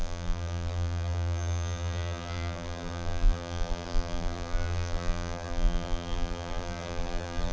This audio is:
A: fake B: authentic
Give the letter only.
A